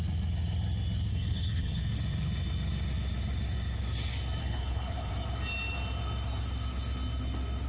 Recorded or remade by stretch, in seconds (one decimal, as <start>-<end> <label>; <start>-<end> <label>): 0.0-1.1 recorded; 1.1-1.8 remade; 1.8-4.4 recorded; 4.4-5.1 remade; 5.1-7.7 recorded